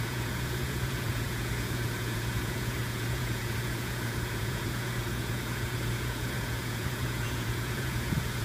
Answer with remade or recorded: remade